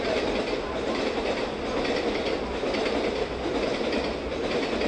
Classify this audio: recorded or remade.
recorded